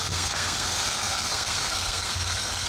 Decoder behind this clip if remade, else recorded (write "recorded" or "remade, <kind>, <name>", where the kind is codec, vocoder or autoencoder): remade, codec, SNAC